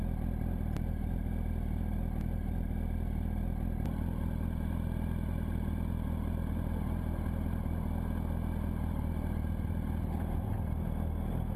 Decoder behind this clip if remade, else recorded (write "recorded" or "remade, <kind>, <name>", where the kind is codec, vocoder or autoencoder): recorded